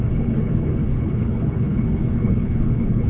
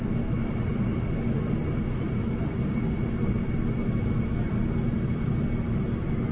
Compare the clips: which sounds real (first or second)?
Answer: second